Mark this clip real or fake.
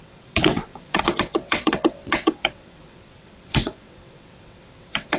fake